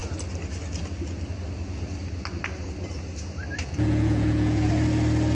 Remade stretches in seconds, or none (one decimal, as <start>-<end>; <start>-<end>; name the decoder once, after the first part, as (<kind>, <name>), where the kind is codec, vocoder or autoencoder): 3.6-4.7 (vocoder, Vocos)